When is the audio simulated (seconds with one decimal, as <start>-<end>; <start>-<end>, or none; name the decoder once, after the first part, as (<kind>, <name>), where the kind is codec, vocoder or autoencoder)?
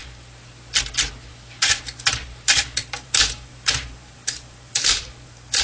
2.8-5.6 (vocoder, BigVGAN v2)